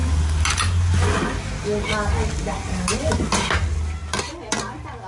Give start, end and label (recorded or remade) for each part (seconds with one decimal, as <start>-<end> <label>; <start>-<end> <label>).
0.0-5.1 recorded